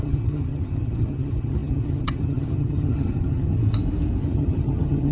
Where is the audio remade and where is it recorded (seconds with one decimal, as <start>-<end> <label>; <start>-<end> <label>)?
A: 0.0-3.6 remade; 3.6-4.2 recorded; 4.2-5.1 remade